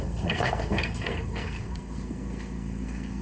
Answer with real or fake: fake